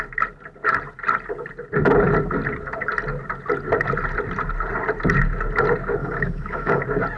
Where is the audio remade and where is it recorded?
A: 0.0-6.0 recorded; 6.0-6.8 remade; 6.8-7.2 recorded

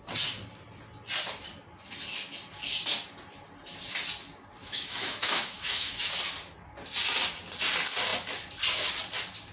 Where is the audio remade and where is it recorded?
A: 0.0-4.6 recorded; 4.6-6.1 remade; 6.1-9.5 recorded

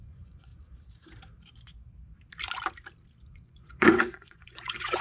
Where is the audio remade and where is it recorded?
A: 0.0-0.5 remade; 0.5-3.3 recorded; 3.3-5.0 remade

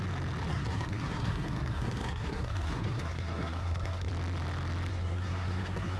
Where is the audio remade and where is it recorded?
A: 0.0-0.5 recorded; 0.5-4.1 remade; 4.1-4.9 recorded; 4.9-6.0 remade

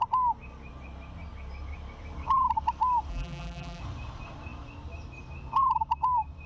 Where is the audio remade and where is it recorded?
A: 0.0-3.1 recorded; 3.1-3.8 remade; 3.8-6.5 recorded

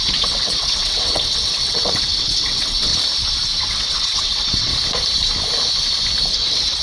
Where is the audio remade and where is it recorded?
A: 0.0-2.9 remade; 2.9-3.6 recorded; 3.6-4.7 remade; 4.7-6.3 recorded; 6.3-6.8 remade

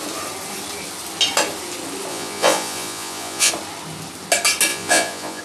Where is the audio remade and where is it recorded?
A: 0.0-2.1 recorded; 2.1-3.5 remade; 3.5-4.7 recorded; 4.7-5.4 remade

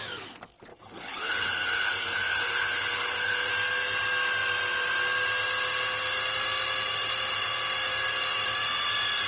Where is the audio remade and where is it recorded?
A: 0.0-0.7 recorded; 0.7-3.5 remade; 3.5-9.3 recorded